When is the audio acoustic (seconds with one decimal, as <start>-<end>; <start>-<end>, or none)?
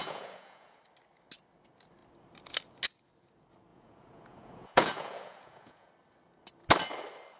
0.8-3.7; 5.9-7.4